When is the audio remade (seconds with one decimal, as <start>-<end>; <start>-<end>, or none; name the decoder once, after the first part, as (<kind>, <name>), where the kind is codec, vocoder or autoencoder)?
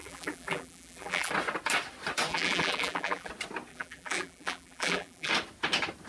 0.0-1.3 (vocoder, BigVGAN v2); 2.3-3.3; 3.7-5.3